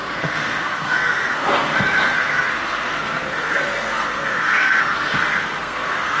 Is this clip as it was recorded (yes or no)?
no